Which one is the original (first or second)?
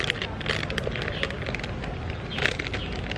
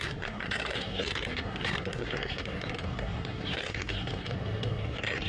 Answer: first